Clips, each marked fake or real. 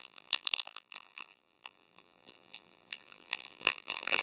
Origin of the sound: fake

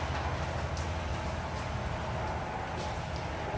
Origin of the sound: real